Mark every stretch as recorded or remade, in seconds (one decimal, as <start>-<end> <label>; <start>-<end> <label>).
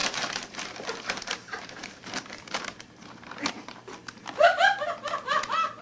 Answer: 0.0-3.5 remade; 3.5-5.8 recorded